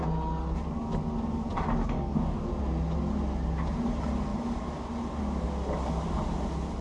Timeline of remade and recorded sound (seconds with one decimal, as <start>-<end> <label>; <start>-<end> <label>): 0.0-1.8 recorded; 1.8-2.5 remade; 2.5-6.8 recorded